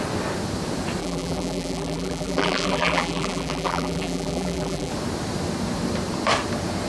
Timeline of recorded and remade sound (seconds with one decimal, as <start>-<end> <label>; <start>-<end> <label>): 0.0-1.0 recorded; 1.0-4.9 remade; 4.9-6.9 recorded